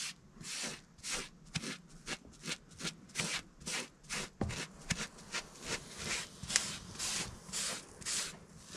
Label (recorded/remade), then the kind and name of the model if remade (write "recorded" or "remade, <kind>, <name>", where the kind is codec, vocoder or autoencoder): recorded